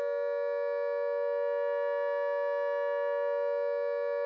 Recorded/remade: recorded